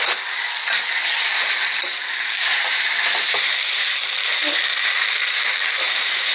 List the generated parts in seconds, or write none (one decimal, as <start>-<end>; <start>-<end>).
none